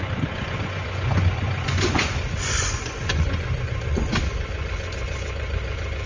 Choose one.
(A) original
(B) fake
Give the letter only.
B